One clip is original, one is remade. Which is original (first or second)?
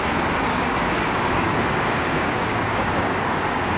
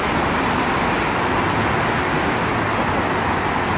second